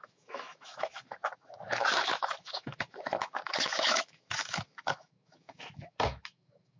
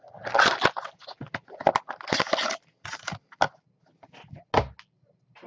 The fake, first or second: first